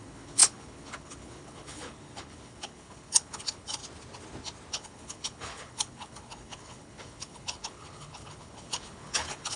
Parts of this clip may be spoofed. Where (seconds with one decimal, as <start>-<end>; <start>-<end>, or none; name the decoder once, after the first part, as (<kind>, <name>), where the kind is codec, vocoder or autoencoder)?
0.0-3.8 (codec, HILCodec); 4.7-9.6